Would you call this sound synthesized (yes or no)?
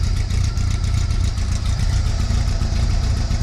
yes